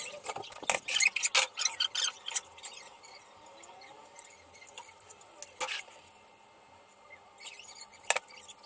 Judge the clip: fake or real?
real